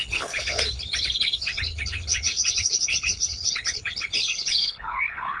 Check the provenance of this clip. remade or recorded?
remade